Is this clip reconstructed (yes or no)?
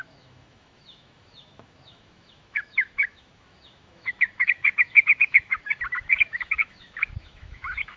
yes